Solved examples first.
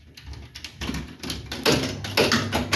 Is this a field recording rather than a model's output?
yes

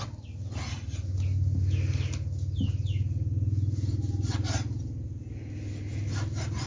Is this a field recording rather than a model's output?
yes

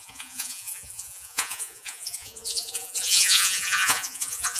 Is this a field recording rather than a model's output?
no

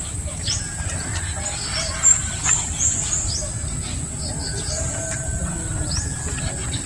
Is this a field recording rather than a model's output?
yes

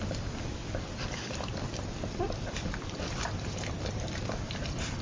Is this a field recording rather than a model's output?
yes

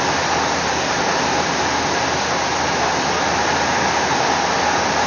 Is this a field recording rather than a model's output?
yes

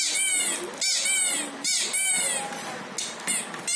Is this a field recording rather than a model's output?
yes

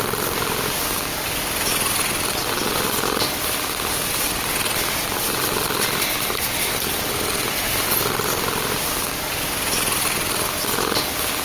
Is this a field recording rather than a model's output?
yes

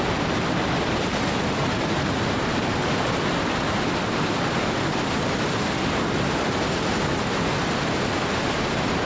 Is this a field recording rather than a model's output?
yes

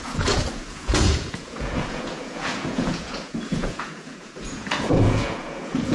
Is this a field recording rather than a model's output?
no